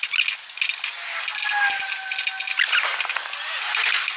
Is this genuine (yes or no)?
yes